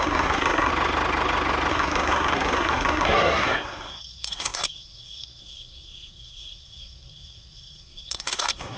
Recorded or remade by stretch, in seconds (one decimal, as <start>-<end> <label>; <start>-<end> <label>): 0.0-0.7 remade; 0.7-1.7 recorded; 1.7-8.8 remade